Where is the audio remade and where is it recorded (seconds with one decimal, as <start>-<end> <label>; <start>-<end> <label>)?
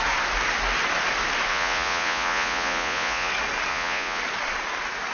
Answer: 0.0-1.5 recorded; 1.5-3.3 remade; 3.3-3.7 recorded; 3.7-4.2 remade; 4.2-5.1 recorded